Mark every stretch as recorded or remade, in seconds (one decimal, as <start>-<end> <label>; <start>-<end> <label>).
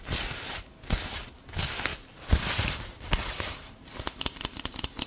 0.0-5.1 recorded